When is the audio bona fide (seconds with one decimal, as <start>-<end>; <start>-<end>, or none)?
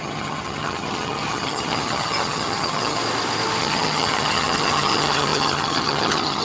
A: 3.0-3.6